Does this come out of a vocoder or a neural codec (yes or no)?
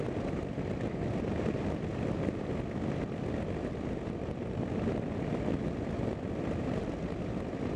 no